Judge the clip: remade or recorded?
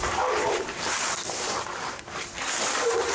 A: remade